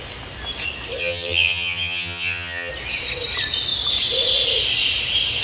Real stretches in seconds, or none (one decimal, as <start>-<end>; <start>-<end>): 0.0-1.0; 2.7-5.4